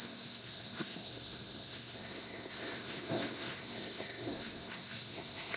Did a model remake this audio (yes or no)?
yes